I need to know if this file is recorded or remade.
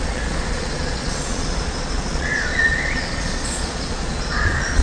remade